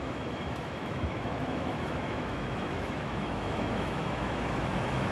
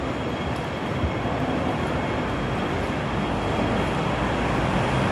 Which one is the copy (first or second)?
first